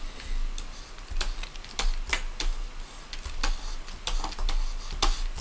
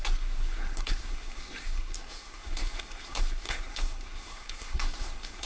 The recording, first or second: first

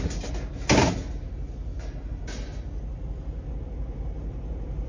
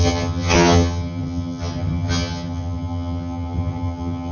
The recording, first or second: first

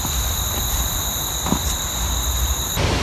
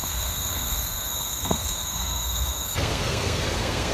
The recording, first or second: first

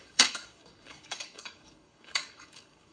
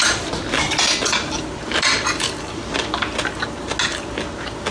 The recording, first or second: second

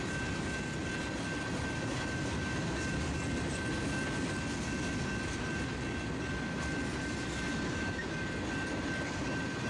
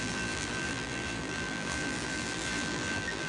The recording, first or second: first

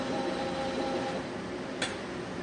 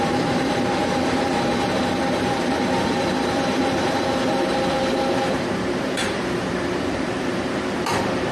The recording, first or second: first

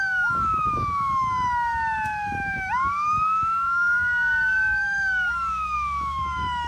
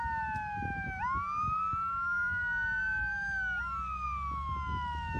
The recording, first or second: second